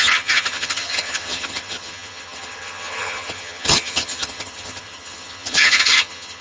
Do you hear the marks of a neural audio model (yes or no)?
yes